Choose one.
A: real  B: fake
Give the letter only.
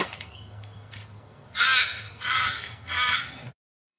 B